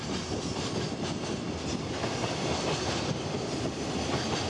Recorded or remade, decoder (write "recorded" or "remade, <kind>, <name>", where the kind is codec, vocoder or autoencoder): recorded